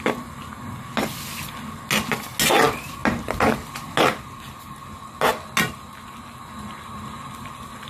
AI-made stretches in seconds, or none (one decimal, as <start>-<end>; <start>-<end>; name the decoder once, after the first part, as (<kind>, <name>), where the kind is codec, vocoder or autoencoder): none